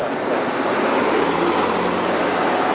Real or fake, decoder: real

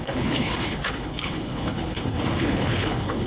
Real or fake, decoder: fake, codec, HILCodec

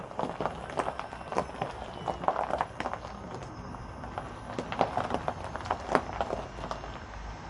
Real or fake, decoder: real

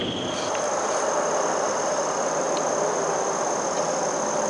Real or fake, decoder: real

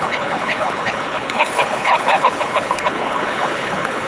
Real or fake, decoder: fake, codec, HILCodec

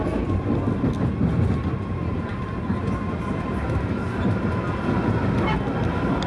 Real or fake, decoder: real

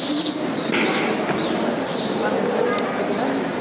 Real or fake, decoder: real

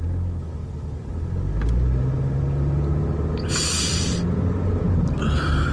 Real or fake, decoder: real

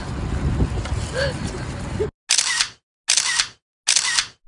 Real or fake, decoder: real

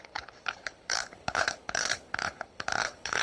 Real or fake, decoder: fake, codec, HILCodec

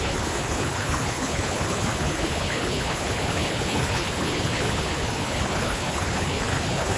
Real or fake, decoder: fake, codec, HILCodec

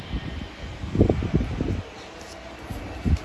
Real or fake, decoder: real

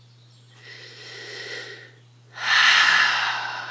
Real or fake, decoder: real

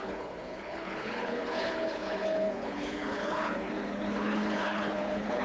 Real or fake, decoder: fake, codec, HILCodec